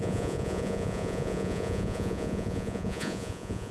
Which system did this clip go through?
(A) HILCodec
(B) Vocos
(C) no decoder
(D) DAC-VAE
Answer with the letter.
B